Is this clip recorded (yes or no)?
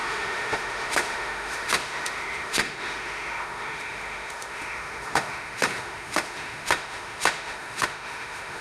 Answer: no